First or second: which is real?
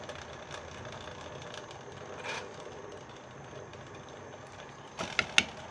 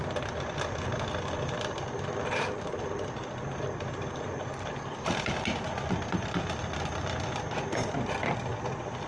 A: first